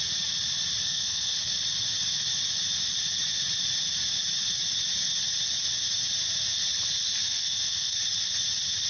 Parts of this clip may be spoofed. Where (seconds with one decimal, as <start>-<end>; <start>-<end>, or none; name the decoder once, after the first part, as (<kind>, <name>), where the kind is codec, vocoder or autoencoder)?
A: 0.8-1.5 (codec, SNAC); 7.2-8.0